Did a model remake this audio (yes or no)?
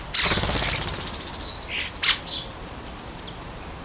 no